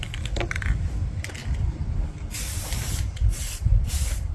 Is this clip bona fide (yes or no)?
yes